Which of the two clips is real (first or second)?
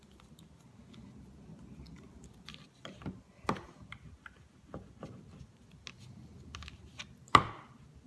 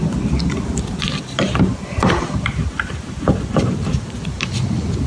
first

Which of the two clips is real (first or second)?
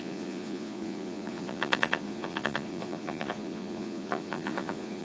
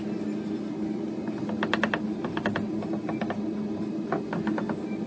second